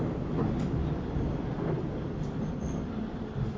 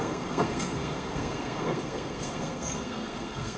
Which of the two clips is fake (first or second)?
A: second